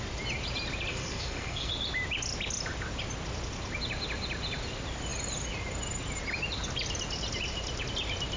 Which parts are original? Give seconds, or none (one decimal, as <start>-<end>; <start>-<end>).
0.0-0.9; 1.7-8.4